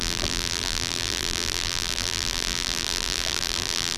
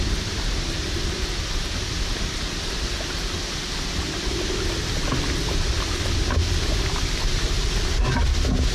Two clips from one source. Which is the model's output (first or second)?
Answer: first